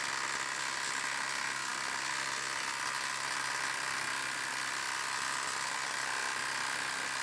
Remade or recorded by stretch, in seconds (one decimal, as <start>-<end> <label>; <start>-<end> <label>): 0.0-7.2 recorded